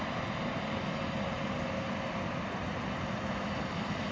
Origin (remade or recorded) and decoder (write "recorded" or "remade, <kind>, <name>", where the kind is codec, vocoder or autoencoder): recorded